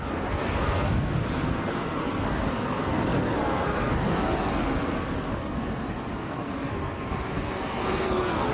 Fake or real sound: fake